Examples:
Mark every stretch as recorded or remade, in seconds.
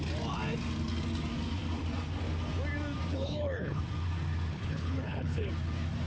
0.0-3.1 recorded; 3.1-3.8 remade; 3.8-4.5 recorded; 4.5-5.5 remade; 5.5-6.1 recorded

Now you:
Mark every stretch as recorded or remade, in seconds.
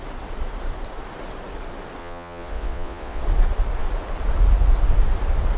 0.0-2.0 recorded; 2.0-3.2 remade; 3.2-5.6 recorded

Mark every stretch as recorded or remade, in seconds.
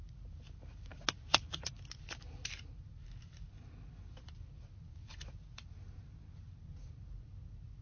0.0-7.8 recorded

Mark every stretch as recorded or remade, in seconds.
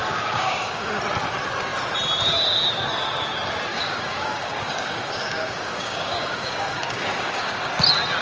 0.0-1.0 remade; 1.0-3.7 recorded; 3.7-7.7 remade; 7.7-8.2 recorded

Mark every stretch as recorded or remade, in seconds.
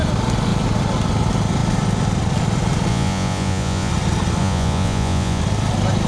0.0-2.9 recorded; 2.9-3.9 remade; 3.9-4.4 recorded; 4.4-5.4 remade; 5.4-6.1 recorded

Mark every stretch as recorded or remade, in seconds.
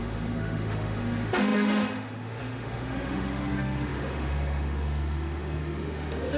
0.0-6.4 remade